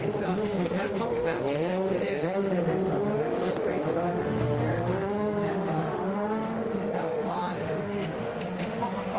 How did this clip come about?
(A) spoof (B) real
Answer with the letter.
A